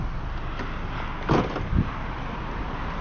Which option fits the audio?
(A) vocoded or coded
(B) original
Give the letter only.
B